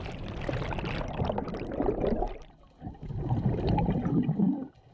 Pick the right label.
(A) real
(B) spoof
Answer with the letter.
A